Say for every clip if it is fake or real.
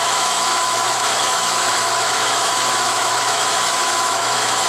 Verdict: fake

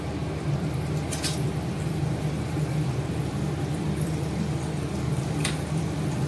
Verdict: fake